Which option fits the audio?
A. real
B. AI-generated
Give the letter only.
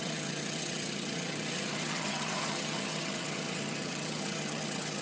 B